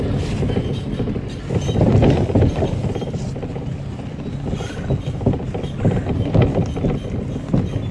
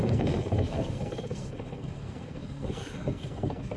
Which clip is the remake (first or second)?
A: second